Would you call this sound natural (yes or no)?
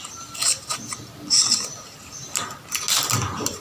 yes